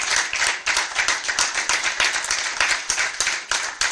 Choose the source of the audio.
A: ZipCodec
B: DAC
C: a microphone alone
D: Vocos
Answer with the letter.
C